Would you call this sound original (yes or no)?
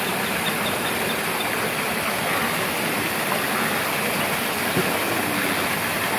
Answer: yes